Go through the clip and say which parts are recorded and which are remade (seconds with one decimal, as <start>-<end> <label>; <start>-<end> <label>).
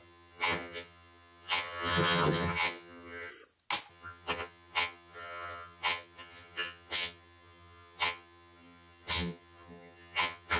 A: 0.0-3.3 remade; 3.3-3.9 recorded; 3.9-10.6 remade